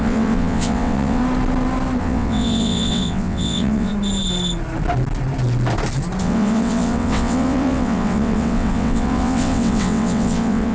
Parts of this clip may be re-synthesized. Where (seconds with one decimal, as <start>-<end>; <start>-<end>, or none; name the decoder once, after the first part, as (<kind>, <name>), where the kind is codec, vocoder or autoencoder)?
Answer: 0.0-1.2 (vocoder, WaveNeXt); 2.0-3.9; 6.2-10.7